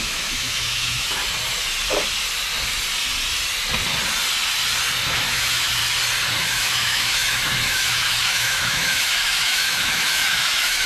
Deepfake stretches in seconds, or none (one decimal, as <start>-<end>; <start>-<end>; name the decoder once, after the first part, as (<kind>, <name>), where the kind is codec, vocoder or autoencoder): 0.0-1.2 (autoencoder, DAC-VAE); 5.1-5.8; 6.4-10.9